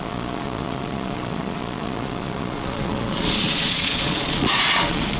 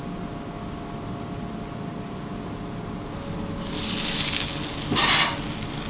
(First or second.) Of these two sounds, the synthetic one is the first